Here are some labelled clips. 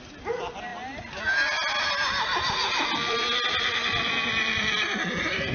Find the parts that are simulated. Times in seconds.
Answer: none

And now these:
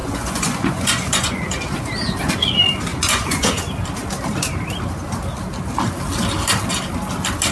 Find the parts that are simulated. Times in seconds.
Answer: 0.0-1.4 (vocoder, Vocos); 2.9-3.6

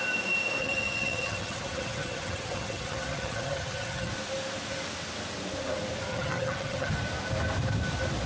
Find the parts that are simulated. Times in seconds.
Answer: 0.6-4.1 (vocoder, HiFi-GAN); 6.1-6.9

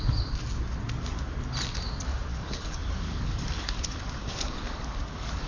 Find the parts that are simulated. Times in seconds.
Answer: 2.3-5.5 (codec, DAC)

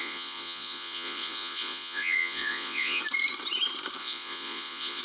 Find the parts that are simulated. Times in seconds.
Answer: 0.0-3.0 (vocoder, Vocos); 4.0-5.0